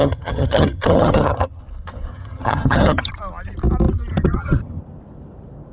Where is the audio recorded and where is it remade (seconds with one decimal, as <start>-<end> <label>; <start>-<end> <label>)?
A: 0.0-1.6 remade; 1.6-2.1 recorded; 2.1-3.1 remade; 3.1-4.1 recorded; 4.1-4.8 remade; 4.8-5.7 recorded